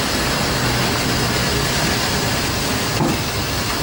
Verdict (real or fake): real